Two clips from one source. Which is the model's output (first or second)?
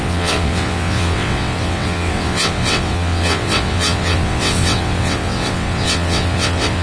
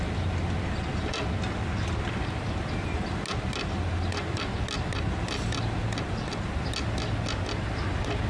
first